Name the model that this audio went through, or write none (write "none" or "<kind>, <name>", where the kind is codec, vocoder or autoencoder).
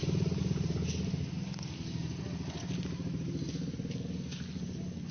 none